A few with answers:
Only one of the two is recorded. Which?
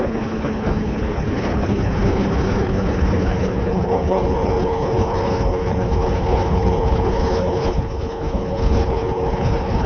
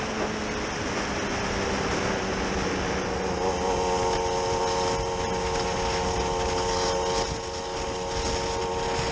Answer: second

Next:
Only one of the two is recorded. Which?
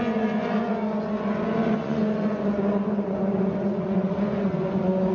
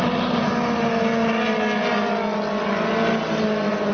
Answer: second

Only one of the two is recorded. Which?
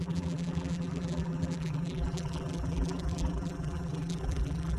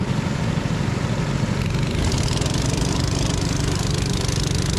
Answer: second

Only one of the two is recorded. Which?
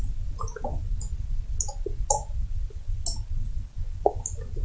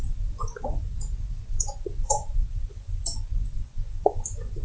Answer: first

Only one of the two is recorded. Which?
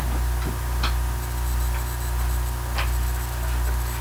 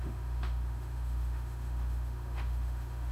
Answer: first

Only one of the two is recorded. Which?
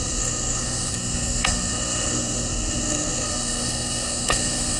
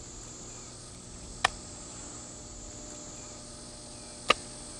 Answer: second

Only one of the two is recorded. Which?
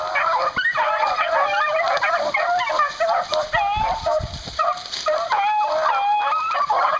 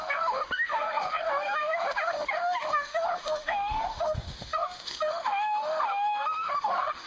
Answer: first